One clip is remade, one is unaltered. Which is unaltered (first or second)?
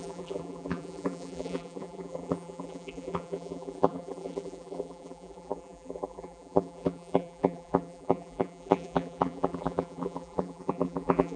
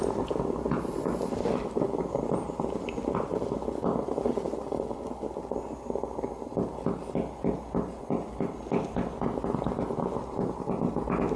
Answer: second